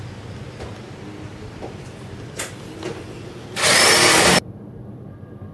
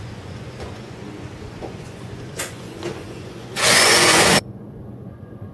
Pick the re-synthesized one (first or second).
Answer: second